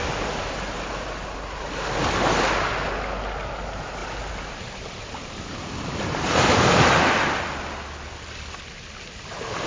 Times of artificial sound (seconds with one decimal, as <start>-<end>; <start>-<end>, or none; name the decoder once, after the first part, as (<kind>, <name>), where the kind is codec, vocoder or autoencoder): 4.0-7.4 (vocoder, BigVGAN v2)